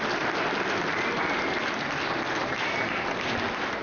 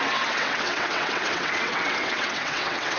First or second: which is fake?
second